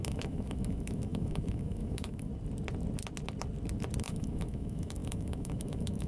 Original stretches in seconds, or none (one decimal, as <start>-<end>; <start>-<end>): 2.3-4.0